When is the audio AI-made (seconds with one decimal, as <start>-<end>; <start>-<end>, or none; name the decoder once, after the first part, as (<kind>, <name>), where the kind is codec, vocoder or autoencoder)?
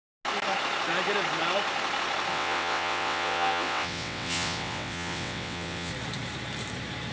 2.3-5.9 (vocoder, WaveNeXt)